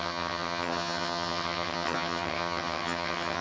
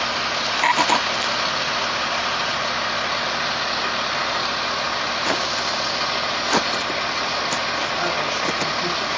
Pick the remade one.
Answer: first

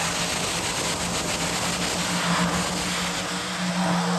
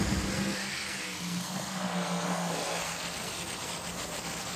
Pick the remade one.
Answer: second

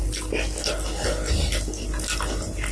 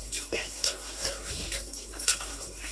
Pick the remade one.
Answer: second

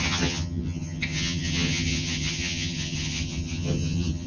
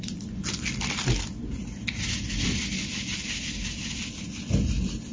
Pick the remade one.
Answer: first